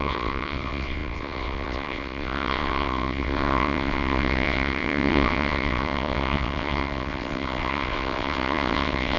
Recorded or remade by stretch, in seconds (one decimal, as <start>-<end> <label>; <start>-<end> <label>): 0.0-9.2 remade